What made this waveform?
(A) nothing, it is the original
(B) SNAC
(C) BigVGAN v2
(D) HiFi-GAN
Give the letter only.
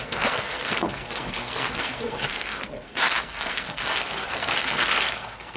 B